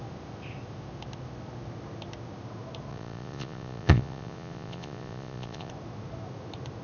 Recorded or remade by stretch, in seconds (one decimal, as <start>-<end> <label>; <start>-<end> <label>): 0.0-2.9 recorded; 2.9-5.7 remade; 5.7-6.8 recorded